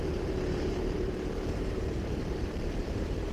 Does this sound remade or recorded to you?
remade